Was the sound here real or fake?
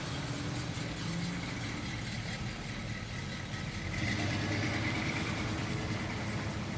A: real